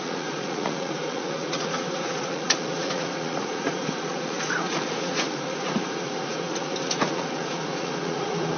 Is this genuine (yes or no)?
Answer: no